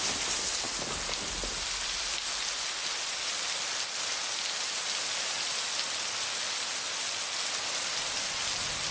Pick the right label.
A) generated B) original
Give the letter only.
B